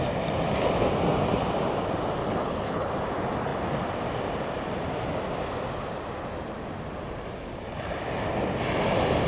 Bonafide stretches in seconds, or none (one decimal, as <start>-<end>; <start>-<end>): 0.0-2.2; 2.9-9.3